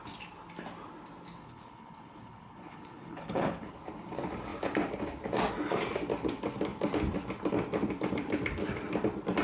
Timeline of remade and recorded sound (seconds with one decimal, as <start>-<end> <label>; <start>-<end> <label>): 0.0-1.4 recorded; 1.4-3.7 remade; 3.7-9.4 recorded